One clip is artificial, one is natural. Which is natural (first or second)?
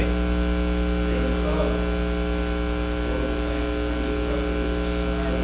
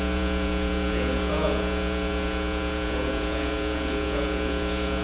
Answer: first